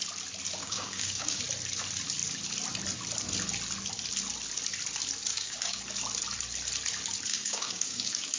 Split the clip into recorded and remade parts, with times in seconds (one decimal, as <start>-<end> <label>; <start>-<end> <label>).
0.0-0.6 recorded; 0.6-1.4 remade; 1.4-5.3 recorded; 5.3-5.8 remade; 5.8-7.3 recorded; 7.3-8.4 remade